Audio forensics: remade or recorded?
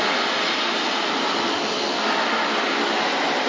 recorded